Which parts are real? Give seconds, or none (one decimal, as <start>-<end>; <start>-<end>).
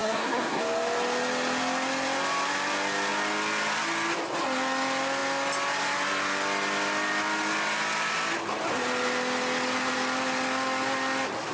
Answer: 0.6-11.5